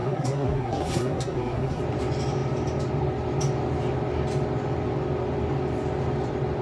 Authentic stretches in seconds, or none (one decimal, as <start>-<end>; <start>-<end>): 1.8-6.6